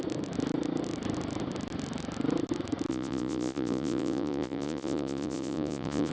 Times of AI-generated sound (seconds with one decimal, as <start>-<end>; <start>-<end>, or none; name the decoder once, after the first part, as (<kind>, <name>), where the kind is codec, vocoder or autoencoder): 2.9-6.1 (vocoder, Vocos)